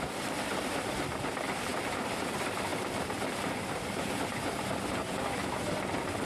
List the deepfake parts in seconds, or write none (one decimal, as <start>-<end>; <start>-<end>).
0.0-1.7; 2.2-2.7; 5.1-6.3